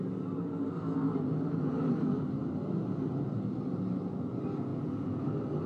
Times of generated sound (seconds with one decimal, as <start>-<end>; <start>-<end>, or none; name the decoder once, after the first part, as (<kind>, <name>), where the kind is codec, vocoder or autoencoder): 4.7-5.2 (vocoder, Vocos)